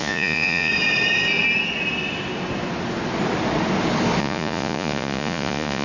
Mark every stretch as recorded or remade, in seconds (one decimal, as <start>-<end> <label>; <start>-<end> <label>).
0.0-0.7 remade; 0.7-4.2 recorded; 4.2-5.8 remade